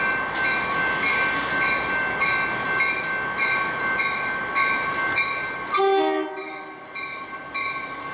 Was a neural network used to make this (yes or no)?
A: no